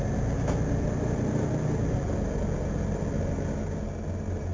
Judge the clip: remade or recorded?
recorded